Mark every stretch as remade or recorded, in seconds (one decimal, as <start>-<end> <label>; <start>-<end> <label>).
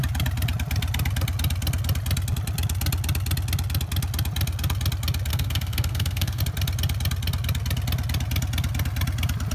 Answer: 0.0-5.3 recorded; 5.3-6.4 remade; 6.4-9.5 recorded